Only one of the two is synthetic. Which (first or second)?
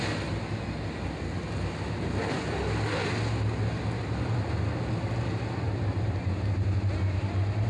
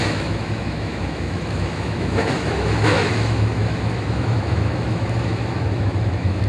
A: second